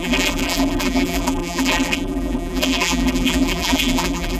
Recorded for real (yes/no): no